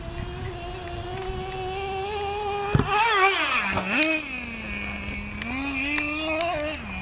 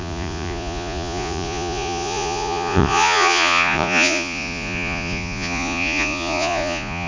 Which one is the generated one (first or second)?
second